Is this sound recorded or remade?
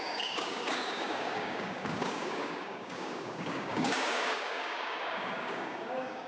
remade